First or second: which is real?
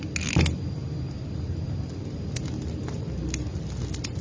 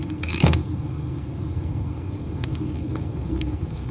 first